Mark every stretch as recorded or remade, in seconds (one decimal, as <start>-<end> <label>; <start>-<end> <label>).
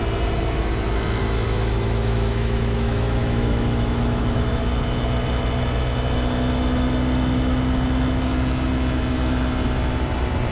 0.0-1.2 recorded; 1.2-4.6 remade; 4.6-10.5 recorded